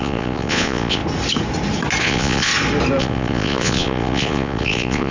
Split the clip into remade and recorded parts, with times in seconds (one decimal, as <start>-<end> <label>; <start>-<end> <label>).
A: 0.0-1.0 remade; 1.0-2.0 recorded; 2.0-2.5 remade; 2.5-3.0 recorded; 3.0-5.1 remade